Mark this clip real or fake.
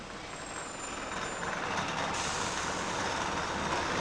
real